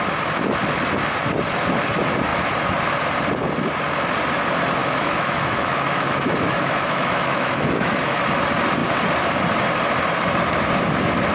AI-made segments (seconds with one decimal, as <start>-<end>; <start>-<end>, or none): 4.8-8.4